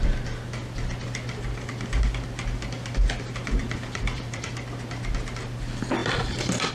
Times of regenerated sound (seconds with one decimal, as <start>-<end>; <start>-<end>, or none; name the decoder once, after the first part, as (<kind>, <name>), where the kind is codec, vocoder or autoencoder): 3.6-4.4 (vocoder, BigVGAN v2); 6.0-6.7

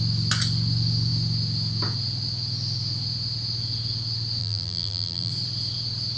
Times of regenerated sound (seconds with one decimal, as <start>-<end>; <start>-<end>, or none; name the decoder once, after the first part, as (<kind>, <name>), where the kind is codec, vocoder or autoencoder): 4.4-5.3 (vocoder, BigVGAN v2)